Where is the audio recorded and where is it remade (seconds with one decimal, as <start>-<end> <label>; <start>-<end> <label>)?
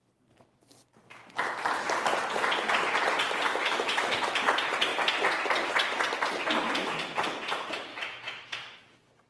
0.0-3.6 recorded; 3.6-4.4 remade; 4.4-7.9 recorded; 7.9-8.8 remade; 8.8-9.3 recorded